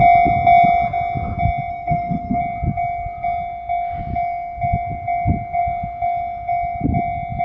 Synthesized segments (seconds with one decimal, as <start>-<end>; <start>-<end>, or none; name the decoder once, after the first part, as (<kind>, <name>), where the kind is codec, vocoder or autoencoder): 1.7-2.4 (codec, SNAC)